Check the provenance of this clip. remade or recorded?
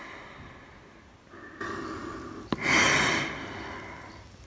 recorded